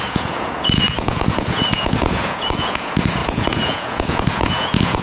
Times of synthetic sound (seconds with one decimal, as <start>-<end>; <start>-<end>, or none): 0.0-5.0